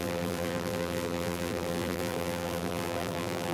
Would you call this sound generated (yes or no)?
yes